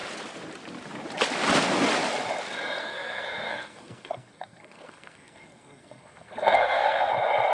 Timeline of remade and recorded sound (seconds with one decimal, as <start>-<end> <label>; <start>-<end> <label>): 0.0-2.8 recorded; 2.8-7.1 remade; 7.1-7.5 recorded